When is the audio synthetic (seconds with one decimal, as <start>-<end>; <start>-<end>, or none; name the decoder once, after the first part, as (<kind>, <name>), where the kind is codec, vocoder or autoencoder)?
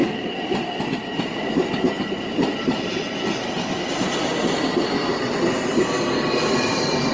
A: 0.0-3.0 (vocoder, BigVGAN v2)